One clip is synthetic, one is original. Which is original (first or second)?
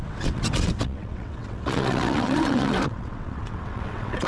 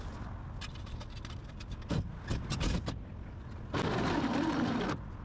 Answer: second